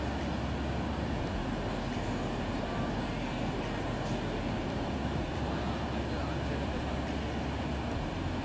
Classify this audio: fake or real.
real